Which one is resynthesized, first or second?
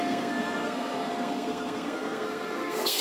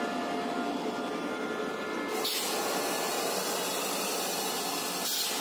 first